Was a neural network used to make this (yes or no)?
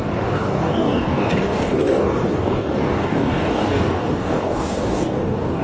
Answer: yes